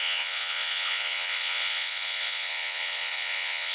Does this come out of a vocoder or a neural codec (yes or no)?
yes